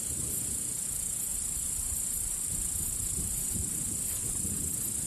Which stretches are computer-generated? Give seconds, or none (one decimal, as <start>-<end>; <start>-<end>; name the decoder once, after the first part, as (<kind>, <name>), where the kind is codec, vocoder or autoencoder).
1.3-3.6 (vocoder, BigVGAN v2)